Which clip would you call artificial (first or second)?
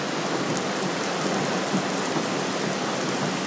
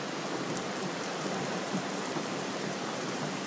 second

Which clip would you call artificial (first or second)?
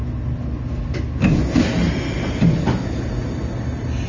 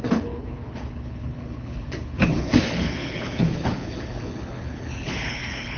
second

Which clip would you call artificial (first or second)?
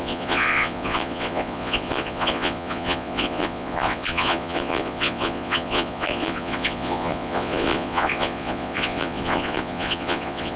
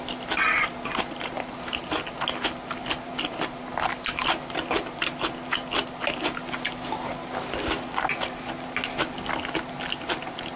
first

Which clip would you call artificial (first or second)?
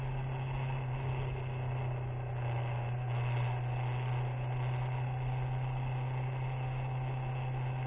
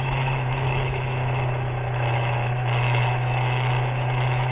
second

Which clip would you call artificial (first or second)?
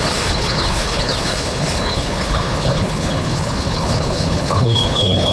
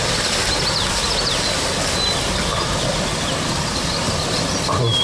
first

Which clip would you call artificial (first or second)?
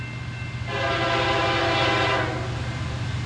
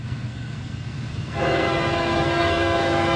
second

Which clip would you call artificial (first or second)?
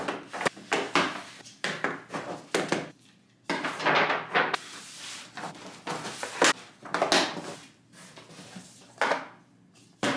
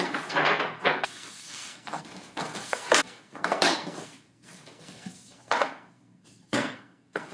second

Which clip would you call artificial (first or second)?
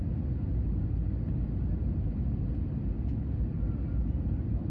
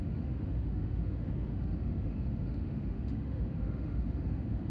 second